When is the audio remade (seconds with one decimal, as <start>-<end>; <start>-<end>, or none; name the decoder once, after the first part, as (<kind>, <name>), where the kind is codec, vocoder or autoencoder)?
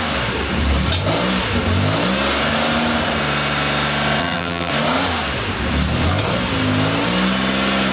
4.2-4.7 (vocoder, BigVGAN v2)